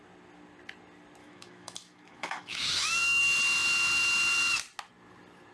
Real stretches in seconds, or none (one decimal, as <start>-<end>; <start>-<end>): 0.0-1.2; 3.2-5.5